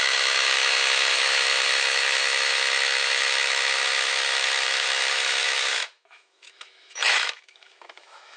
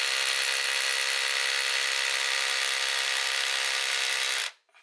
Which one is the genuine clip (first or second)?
second